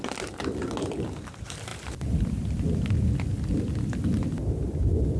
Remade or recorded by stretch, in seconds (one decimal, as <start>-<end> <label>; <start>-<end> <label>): 0.0-5.2 recorded